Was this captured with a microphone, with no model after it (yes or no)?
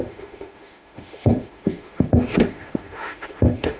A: no